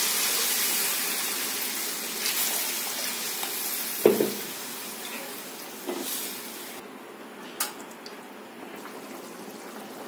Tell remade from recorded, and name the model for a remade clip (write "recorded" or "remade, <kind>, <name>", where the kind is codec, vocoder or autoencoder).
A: recorded